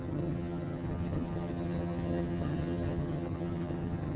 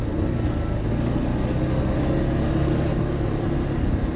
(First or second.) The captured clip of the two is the second